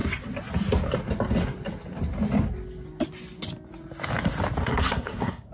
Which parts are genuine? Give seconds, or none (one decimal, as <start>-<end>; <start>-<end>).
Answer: 0.0-4.6